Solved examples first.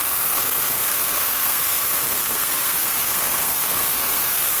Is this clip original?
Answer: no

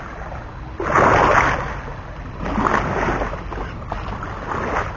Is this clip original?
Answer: yes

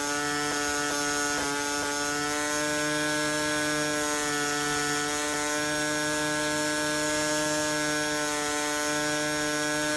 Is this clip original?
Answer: yes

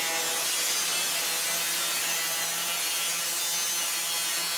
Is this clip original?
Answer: yes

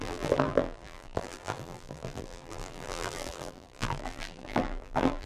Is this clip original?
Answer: no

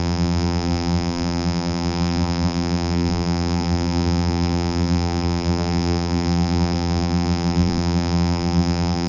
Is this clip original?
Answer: no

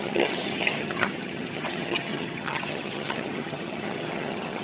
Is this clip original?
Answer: no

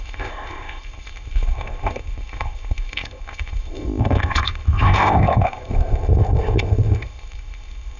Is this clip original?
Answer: no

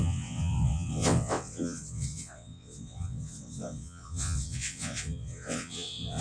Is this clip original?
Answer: no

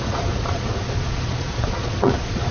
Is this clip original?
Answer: no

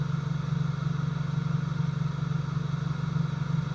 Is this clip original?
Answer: yes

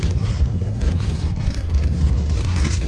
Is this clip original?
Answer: no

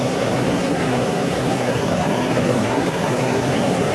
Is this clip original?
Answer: no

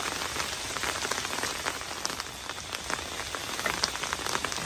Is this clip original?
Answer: yes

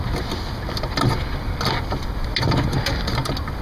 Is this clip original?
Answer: yes